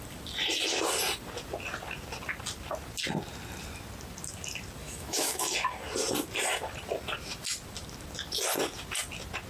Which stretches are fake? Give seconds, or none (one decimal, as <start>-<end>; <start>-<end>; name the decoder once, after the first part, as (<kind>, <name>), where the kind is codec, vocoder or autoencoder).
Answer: 4.8-5.5 (autoencoder, DAC-VAE)